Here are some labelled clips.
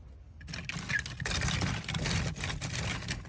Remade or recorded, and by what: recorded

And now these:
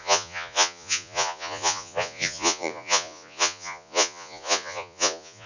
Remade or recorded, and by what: remade, vocoder, Vocos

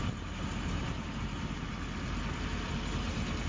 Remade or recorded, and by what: recorded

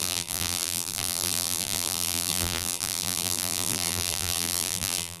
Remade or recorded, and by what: remade, vocoder, BigVGAN v2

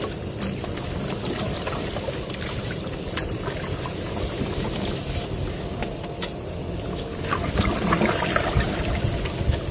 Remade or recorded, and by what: recorded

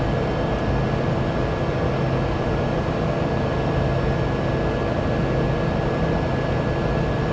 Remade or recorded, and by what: recorded